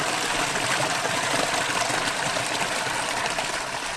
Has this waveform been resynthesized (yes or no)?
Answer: no